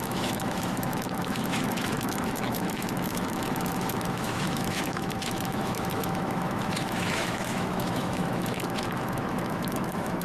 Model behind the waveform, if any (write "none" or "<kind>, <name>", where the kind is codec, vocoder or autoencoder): autoencoder, DAC-VAE